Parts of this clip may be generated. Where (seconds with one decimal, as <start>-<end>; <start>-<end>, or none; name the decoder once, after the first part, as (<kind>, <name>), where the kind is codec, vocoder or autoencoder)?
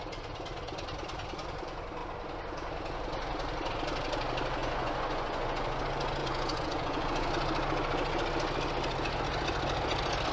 4.6-5.8 (vocoder, Vocos); 6.2-7.3